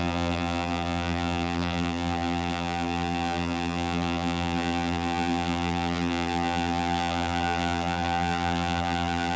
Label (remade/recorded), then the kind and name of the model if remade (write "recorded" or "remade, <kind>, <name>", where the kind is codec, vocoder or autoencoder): remade, vocoder, BigVGAN v2